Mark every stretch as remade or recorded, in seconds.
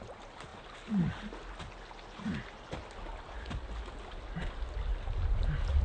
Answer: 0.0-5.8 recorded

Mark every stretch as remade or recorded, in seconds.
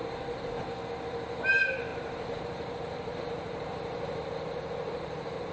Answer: 0.0-0.9 remade; 0.9-1.9 recorded; 1.9-5.5 remade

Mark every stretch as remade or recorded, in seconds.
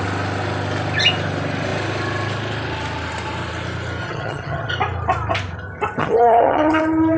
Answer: 0.0-4.0 recorded; 4.0-4.7 remade; 4.7-6.0 recorded; 6.0-6.8 remade; 6.8-7.2 recorded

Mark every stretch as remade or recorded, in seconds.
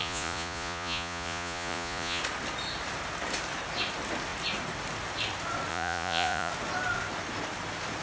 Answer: 0.0-2.2 remade; 2.2-5.7 recorded; 5.7-6.5 remade; 6.5-8.0 recorded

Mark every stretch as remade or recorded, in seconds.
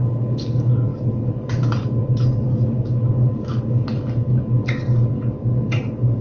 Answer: 0.0-6.2 remade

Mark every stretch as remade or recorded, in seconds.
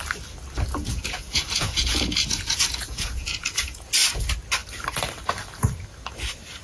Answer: 0.0-0.7 recorded; 0.7-3.9 remade; 3.9-6.6 recorded